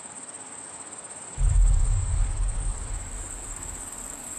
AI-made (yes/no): yes